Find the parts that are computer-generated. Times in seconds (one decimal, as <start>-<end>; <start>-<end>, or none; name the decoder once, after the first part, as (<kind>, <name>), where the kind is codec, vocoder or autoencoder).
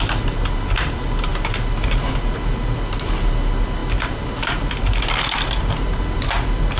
none